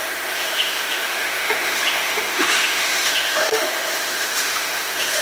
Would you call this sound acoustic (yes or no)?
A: no